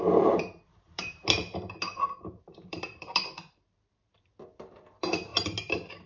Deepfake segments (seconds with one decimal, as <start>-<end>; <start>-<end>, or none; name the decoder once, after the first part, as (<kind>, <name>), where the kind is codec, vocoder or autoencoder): 0.0-1.4 (vocoder, BigVGAN v2); 2.2-5.3